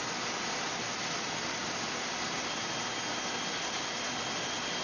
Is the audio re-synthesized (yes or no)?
no